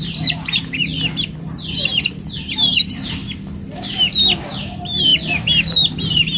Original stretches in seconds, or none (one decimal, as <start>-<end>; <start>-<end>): 0.9-1.4; 3.2-4.3